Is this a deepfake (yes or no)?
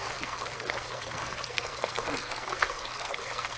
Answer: yes